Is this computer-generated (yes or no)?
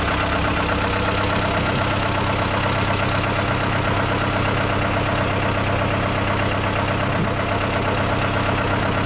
no